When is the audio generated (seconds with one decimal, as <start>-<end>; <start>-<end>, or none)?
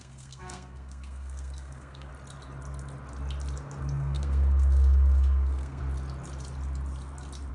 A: 0.0-2.1; 3.8-5.8